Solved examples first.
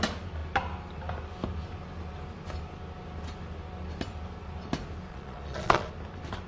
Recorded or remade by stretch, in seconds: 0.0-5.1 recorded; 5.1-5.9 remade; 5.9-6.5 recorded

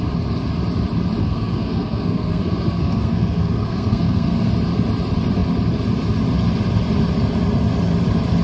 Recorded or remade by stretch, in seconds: 0.0-1.2 recorded; 1.2-4.5 remade; 4.5-8.4 recorded

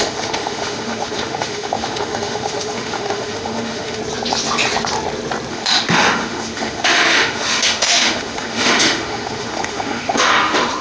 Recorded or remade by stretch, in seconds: 0.0-4.0 remade; 4.0-5.5 recorded; 5.5-10.8 remade